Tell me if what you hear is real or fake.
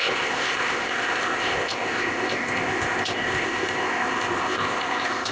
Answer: fake